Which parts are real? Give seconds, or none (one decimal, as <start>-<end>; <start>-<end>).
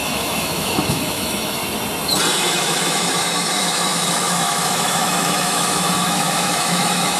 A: 1.6-2.3